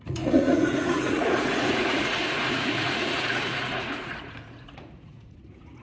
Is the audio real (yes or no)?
no